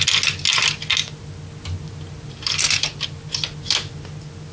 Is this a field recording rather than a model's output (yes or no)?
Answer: yes